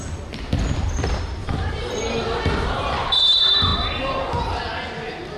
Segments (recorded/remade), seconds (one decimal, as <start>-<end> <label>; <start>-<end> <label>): 0.0-1.4 recorded; 1.4-1.9 remade; 1.9-5.4 recorded